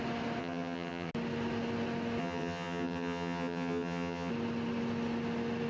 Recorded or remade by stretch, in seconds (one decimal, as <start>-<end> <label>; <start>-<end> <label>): 0.0-0.4 recorded; 0.4-1.1 remade; 1.1-2.2 recorded; 2.2-4.3 remade; 4.3-5.7 recorded